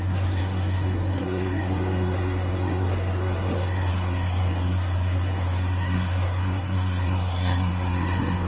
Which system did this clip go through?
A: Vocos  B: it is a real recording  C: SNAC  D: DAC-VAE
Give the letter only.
C